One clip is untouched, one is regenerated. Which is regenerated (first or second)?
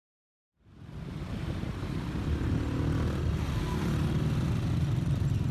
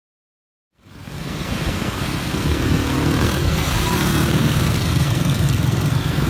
second